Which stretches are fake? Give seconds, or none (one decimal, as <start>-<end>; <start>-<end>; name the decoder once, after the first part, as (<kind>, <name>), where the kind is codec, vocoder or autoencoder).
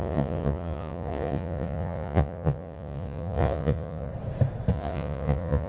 0.0-4.1 (vocoder, Vocos); 4.7-5.7